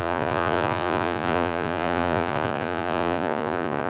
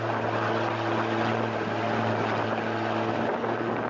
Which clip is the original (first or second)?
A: second